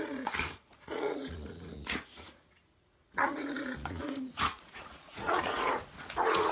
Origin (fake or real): fake